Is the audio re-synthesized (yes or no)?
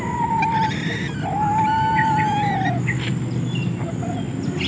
no